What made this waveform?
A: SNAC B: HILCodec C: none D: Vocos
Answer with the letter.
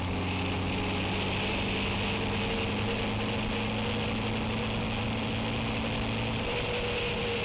C